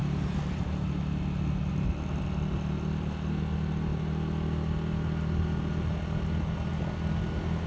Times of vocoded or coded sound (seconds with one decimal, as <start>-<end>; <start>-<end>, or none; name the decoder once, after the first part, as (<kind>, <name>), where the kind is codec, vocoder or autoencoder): none